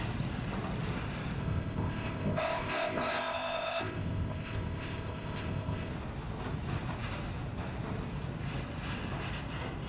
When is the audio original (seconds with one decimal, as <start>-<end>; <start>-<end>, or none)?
0.0-1.4; 5.9-9.9